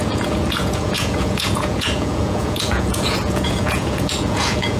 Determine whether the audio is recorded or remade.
remade